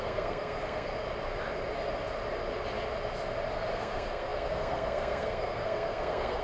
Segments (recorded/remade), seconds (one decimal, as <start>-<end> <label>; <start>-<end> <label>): 0.0-0.9 remade; 0.9-3.7 recorded; 3.7-6.4 remade